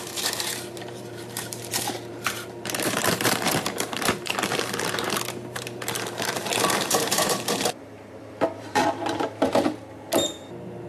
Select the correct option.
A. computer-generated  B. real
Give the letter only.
A